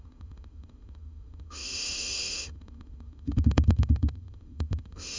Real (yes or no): no